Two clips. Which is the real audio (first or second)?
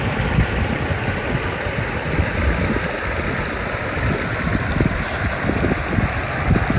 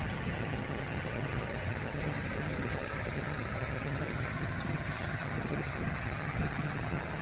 first